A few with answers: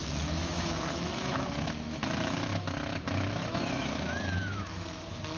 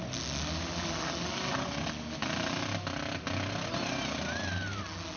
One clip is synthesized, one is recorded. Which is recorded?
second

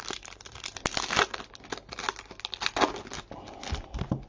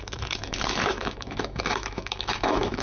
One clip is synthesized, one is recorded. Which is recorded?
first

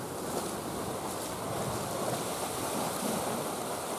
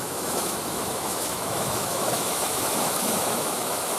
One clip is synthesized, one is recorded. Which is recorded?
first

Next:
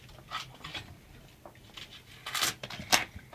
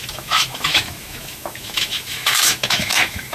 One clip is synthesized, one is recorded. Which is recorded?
first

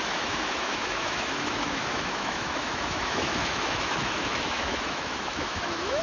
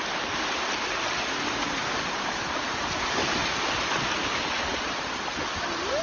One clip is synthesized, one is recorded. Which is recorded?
second